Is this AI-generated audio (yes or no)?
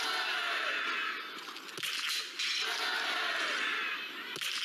no